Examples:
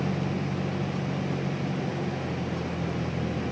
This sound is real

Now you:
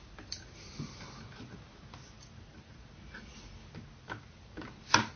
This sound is real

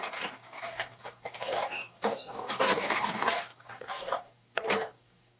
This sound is fake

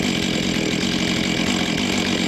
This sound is real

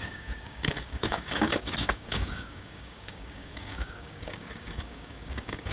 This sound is fake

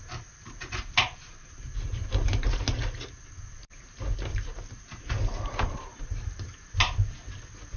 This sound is real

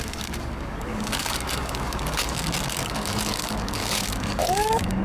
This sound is fake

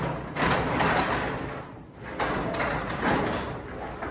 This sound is real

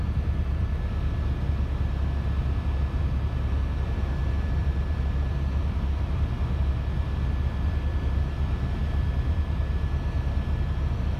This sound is real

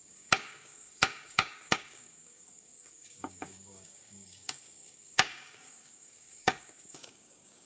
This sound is fake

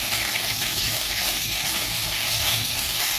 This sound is fake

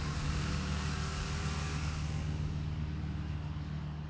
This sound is fake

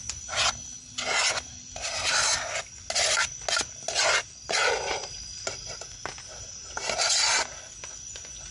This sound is real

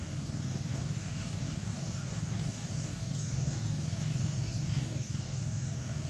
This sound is fake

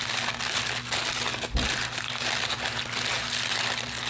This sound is real